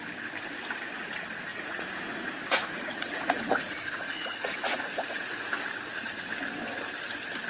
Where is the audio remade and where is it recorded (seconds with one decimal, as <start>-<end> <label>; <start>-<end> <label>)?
0.0-1.5 recorded; 1.5-5.5 remade; 5.5-7.5 recorded